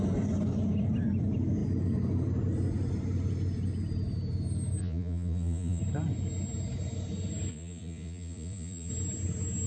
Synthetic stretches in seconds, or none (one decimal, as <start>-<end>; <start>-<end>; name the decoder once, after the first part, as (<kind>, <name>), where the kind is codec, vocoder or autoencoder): 4.8-5.8 (vocoder, Vocos); 7.5-8.9